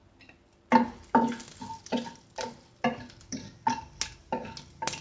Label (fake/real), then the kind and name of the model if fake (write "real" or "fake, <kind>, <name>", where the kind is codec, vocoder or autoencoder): real